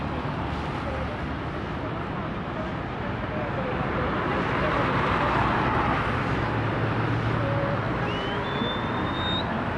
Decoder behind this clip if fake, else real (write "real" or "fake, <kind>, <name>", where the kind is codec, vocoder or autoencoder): real